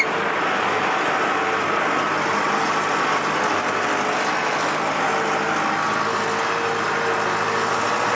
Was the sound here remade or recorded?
recorded